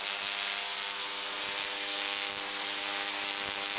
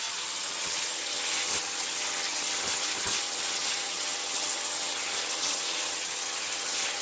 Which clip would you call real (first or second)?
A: first